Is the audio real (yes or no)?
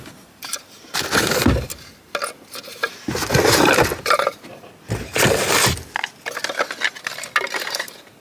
yes